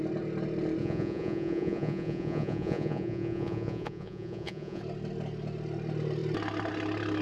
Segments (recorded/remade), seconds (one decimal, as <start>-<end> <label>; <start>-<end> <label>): 0.0-0.8 recorded; 0.8-4.8 remade; 4.8-7.2 recorded